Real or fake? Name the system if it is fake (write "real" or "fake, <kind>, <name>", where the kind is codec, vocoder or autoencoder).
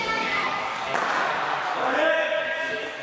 fake, codec, DAC